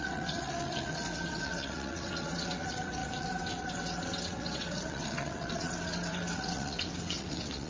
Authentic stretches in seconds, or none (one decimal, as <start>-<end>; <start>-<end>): none